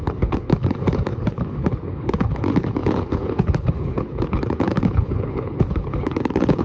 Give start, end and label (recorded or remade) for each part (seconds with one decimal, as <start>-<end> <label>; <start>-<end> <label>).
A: 0.0-6.6 remade